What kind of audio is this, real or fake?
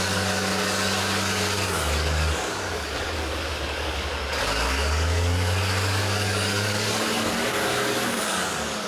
fake